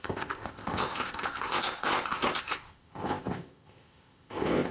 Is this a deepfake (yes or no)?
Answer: yes